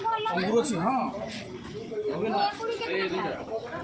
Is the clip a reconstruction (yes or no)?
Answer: no